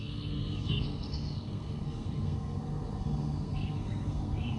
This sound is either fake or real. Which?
fake